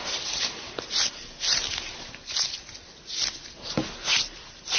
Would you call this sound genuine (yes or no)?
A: yes